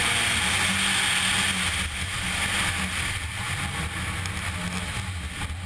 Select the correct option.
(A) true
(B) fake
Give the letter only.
A